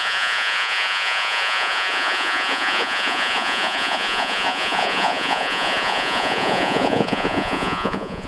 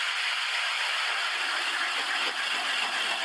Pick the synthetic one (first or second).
first